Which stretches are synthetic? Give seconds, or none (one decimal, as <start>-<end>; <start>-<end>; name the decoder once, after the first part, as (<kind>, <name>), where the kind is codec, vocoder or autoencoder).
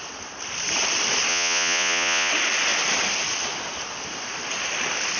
1.3-2.3 (vocoder, Vocos)